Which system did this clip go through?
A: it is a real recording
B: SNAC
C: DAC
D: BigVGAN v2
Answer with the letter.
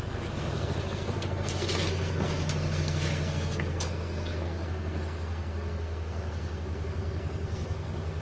B